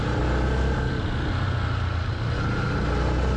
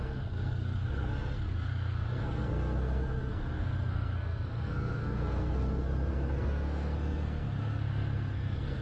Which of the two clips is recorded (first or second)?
first